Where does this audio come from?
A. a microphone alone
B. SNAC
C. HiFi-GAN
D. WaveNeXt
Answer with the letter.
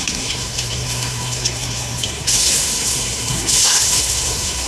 B